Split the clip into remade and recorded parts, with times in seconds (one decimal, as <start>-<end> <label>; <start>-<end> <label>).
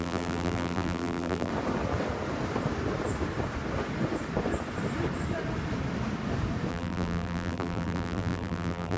0.0-1.5 remade; 1.5-6.7 recorded; 6.7-9.0 remade